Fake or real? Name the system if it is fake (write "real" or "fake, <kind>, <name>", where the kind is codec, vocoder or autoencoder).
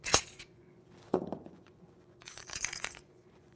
fake, vocoder, Vocos